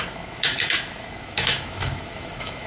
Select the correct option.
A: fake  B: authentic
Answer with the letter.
A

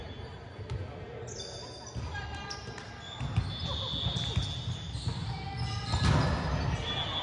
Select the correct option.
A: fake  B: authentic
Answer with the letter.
B